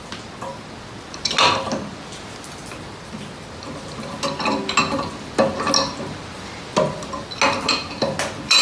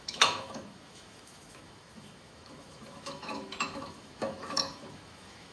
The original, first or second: first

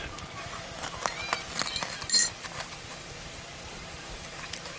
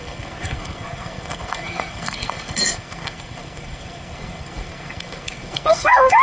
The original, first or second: first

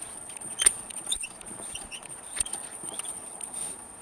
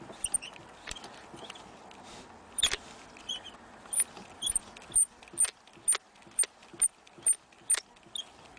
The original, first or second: second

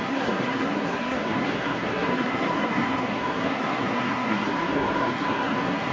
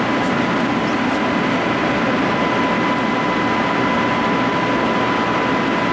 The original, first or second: second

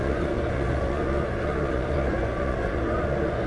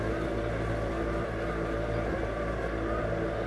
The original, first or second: second